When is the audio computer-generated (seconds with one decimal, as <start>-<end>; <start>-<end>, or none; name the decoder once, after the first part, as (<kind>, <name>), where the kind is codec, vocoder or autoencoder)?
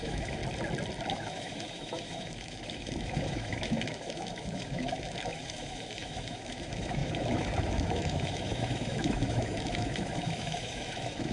0.0-0.4 (autoencoder, DAC-VAE); 1.1-11.3